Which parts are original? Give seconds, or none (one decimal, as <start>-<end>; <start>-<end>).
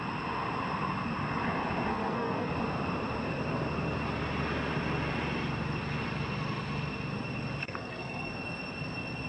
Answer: 0.0-1.9; 2.5-7.6; 8.3-9.3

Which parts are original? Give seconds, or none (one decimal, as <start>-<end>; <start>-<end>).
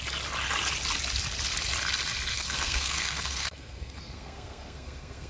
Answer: 0.0-2.3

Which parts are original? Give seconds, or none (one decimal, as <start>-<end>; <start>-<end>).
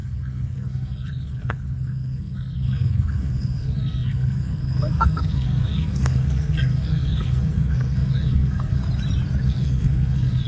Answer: 8.8-9.4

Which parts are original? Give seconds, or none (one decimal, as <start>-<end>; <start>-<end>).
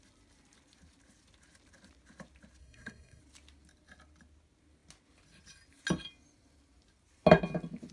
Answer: 0.0-2.6; 3.2-7.9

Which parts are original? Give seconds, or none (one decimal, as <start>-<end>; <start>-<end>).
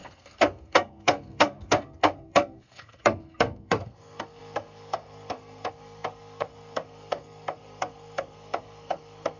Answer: none